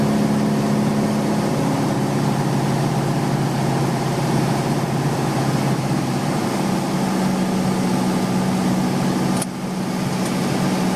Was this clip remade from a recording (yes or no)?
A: no